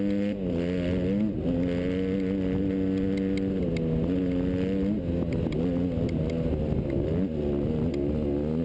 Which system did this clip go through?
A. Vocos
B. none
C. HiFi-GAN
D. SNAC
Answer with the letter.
B